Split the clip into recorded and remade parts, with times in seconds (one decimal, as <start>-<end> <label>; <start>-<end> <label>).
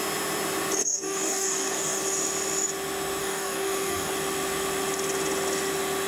0.0-0.8 recorded; 0.8-2.0 remade; 2.0-3.2 recorded; 3.2-4.1 remade; 4.1-6.1 recorded